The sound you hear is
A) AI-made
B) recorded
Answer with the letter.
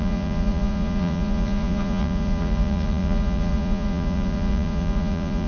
A